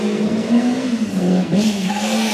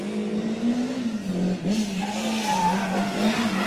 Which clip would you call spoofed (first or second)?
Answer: first